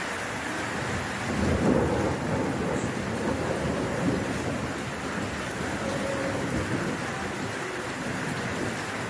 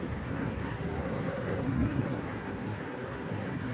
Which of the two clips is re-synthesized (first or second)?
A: second